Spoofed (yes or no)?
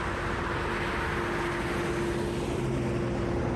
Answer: no